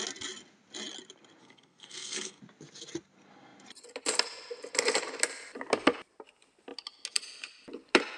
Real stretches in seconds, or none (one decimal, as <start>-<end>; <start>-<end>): 0.0-1.4; 2.4-8.2